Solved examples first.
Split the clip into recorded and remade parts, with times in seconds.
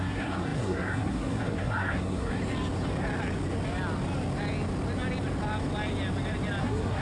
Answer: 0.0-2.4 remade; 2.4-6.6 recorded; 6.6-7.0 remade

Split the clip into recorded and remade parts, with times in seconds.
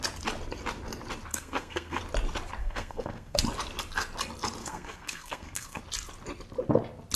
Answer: 0.0-1.3 recorded; 1.3-2.0 remade; 2.0-2.6 recorded; 2.6-3.4 remade; 3.4-4.6 recorded; 4.6-5.8 remade; 5.8-7.2 recorded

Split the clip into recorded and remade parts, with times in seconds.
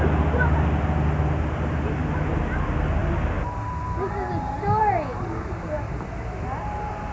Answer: 0.0-7.1 recorded